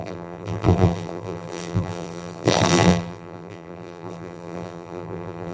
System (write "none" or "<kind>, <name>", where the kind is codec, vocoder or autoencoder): vocoder, BigVGAN v2